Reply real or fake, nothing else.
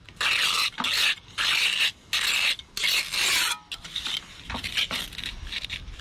real